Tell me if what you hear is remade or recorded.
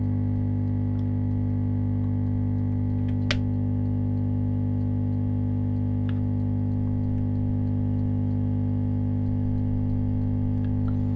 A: recorded